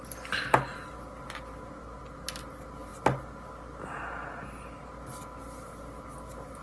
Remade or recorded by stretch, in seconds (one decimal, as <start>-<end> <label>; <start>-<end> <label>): 0.0-6.6 recorded